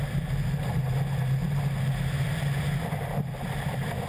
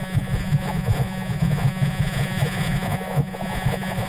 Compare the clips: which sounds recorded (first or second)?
first